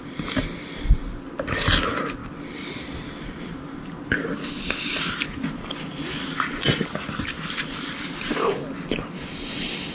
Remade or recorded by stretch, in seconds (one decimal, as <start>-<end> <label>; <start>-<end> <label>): 0.0-9.9 recorded